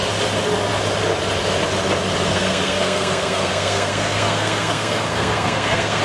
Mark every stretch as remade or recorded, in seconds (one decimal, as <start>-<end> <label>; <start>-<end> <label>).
0.0-2.3 recorded; 2.3-6.0 remade